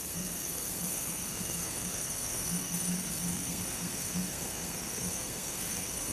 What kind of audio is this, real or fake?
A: fake